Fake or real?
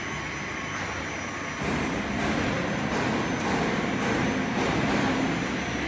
real